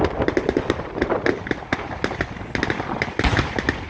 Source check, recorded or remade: recorded